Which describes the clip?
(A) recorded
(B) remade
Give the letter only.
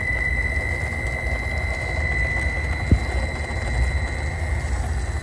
A